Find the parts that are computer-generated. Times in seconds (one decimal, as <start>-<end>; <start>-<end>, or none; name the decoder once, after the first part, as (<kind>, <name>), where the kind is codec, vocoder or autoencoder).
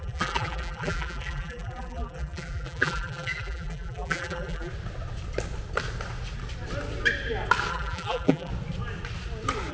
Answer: 0.0-4.7 (vocoder, BigVGAN v2); 7.7-8.5